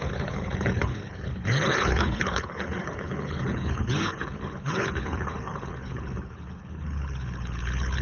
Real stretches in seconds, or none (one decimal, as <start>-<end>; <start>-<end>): none